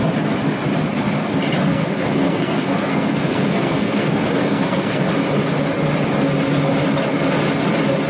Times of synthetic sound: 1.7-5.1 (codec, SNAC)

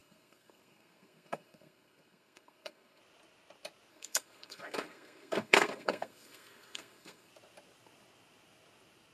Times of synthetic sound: 0.0-3.0 (codec, SNAC); 3.9-7.3